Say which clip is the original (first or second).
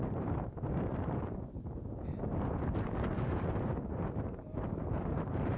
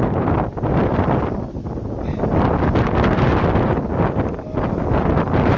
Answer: second